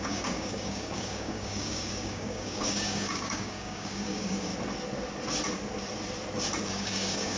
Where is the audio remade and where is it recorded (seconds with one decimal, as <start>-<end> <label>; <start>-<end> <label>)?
0.0-4.5 remade; 4.5-6.7 recorded; 6.7-7.4 remade